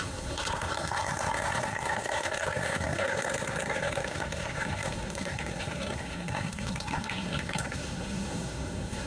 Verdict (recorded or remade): remade